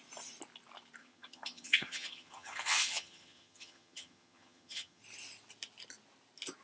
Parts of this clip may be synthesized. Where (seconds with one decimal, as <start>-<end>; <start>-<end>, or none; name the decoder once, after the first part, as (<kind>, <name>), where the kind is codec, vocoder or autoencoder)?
1.0-5.0 (vocoder, HiFi-GAN)